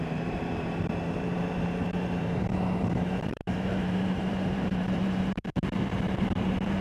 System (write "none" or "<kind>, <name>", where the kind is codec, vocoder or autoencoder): vocoder, BigVGAN v2